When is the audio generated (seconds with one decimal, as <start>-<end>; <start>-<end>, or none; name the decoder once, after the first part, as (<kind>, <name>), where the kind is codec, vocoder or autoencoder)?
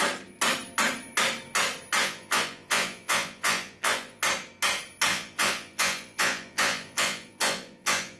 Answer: 2.0-4.2 (vocoder, Vocos); 5.1-8.2